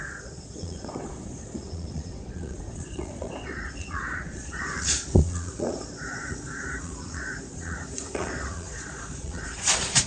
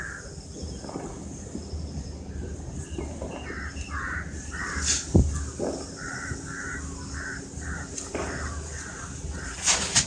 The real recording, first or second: second